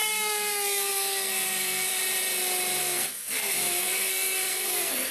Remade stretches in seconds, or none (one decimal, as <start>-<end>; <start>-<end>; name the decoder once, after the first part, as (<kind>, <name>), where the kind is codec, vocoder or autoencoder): 0.0-2.0 (codec, SNAC); 2.8-5.1